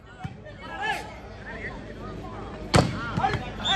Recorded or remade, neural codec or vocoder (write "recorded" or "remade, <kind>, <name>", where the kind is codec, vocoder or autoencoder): recorded